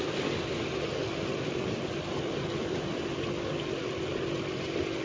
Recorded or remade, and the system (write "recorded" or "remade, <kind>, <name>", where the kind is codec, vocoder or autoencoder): recorded